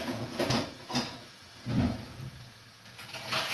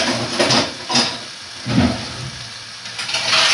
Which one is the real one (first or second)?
second